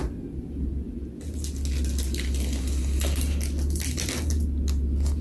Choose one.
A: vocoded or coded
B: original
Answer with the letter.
B